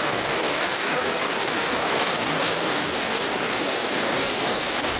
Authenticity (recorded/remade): remade